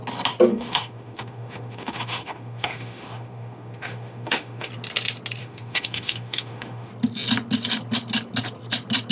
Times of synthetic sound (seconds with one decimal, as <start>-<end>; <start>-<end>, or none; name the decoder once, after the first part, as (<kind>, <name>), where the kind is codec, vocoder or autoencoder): 0.5-4.7 (autoencoder, DAC-VAE); 5.4-6.9